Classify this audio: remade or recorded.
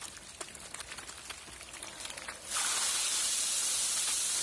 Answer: recorded